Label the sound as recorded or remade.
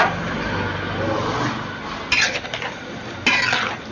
recorded